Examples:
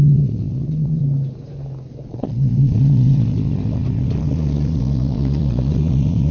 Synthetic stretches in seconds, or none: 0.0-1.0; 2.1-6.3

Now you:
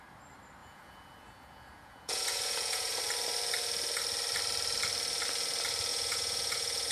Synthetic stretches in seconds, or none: 0.6-3.0; 5.9-6.9